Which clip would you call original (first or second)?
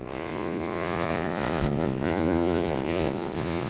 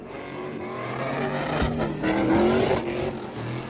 second